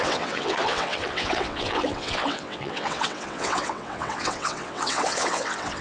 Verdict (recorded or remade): remade